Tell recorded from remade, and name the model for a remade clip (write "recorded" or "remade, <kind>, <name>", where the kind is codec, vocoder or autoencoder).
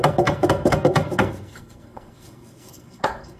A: remade, codec, SNAC